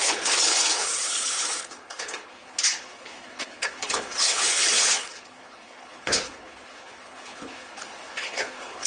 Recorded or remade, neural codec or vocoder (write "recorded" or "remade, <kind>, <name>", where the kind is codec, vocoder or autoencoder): remade, codec, HILCodec